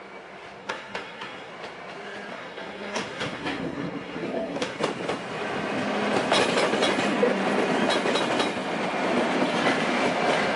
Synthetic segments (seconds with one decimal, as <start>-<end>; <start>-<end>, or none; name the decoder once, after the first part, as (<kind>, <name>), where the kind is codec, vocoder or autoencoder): 0.6-1.5 (codec, SNAC); 2.3-4.8